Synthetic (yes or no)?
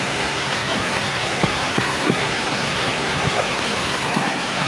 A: yes